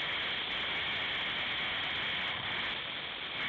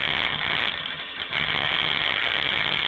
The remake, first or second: second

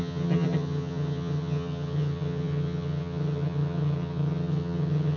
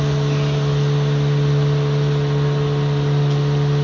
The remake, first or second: first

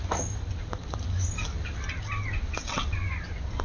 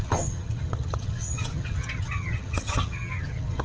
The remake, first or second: second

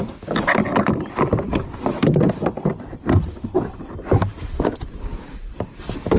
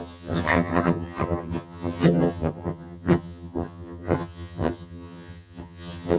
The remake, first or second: second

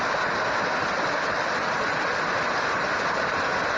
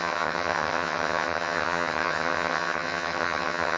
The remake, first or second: second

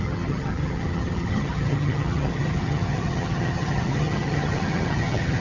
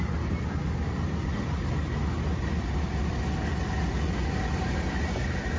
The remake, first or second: first